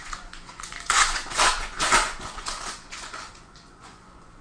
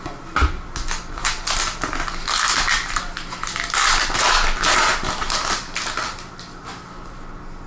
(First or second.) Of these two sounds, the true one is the second